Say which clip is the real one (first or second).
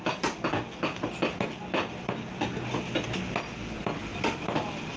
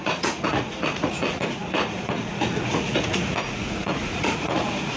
first